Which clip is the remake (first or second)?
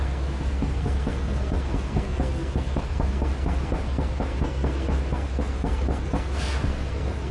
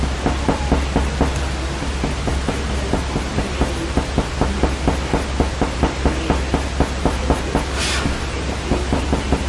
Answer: first